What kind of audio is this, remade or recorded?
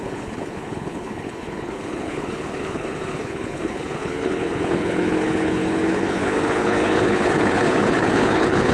remade